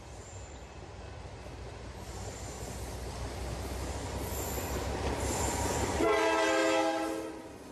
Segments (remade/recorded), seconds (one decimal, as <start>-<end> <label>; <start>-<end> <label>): 0.0-7.7 recorded